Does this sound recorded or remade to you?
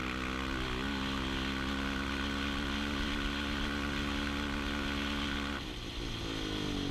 recorded